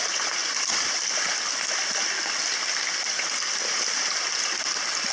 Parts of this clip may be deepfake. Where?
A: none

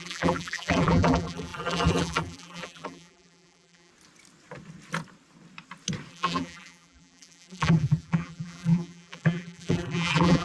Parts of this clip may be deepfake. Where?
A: 0.0-3.9 (vocoder, BigVGAN v2); 6.1-10.4

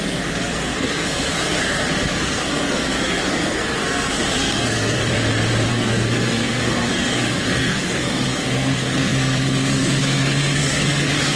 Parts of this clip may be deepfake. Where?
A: 0.0-5.0 (codec, SNAC); 5.7-11.4